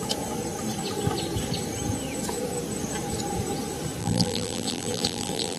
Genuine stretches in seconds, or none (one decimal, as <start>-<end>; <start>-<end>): 0.0-4.0